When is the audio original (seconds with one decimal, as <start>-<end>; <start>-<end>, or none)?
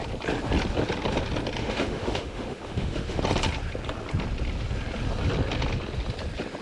0.0-1.6; 3.2-6.6